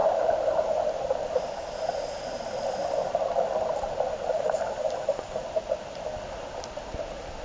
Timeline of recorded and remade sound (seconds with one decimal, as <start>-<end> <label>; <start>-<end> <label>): 0.0-7.4 recorded